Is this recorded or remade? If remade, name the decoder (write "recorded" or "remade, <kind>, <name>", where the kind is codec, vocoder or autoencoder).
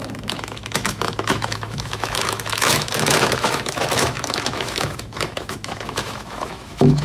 remade, autoencoder, DAC-VAE